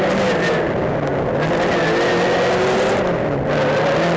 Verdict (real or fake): real